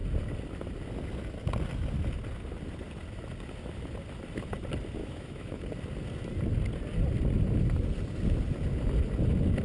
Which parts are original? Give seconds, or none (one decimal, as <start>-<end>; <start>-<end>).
0.0-5.0; 5.6-9.6